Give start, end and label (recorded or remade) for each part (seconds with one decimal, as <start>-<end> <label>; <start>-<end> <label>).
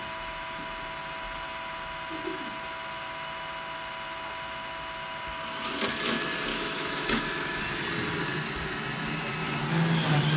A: 0.0-6.5 recorded; 6.5-7.6 remade; 7.6-10.4 recorded